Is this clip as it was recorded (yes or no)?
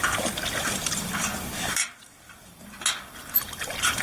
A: yes